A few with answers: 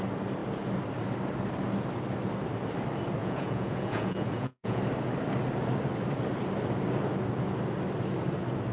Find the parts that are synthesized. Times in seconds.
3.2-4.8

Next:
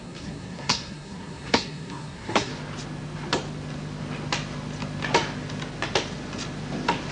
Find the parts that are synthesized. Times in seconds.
0.0-2.5

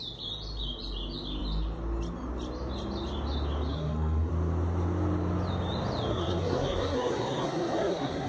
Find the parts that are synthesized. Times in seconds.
3.7-4.3; 6.1-8.3

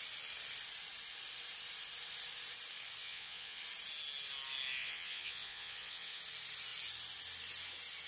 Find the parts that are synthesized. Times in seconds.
3.0-3.6; 4.8-6.2